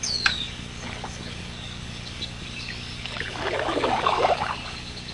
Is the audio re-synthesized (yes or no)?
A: yes